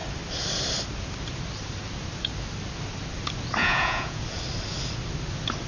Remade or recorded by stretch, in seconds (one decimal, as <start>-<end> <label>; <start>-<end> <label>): 0.0-3.6 recorded; 3.6-4.2 remade; 4.2-5.7 recorded